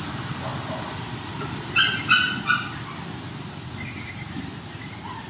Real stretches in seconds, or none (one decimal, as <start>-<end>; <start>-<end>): 0.0-5.3